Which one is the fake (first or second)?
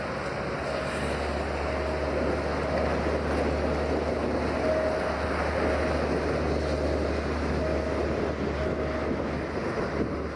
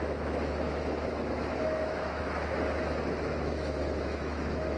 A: second